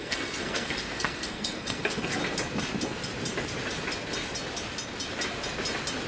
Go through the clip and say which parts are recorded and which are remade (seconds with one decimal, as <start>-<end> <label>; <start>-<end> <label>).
0.0-2.2 remade; 2.2-6.1 recorded